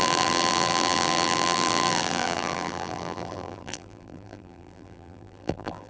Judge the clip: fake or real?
fake